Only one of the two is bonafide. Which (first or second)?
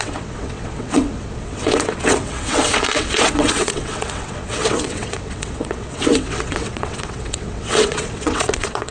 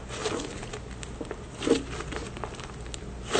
second